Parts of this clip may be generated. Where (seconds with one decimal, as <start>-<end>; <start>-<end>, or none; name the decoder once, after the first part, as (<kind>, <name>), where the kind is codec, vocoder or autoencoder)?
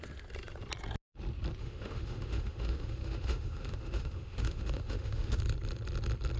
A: 1.6-5.4 (autoencoder, DAC-VAE)